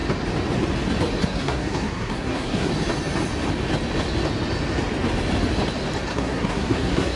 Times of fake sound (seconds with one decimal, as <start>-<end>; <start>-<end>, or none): 1.2-2.7; 6.1-7.2